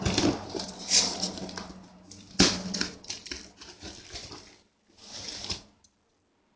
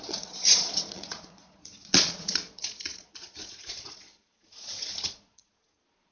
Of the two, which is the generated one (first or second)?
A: second